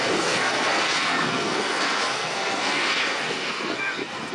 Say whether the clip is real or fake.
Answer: fake